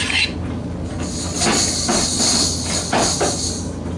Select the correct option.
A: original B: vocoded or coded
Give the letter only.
A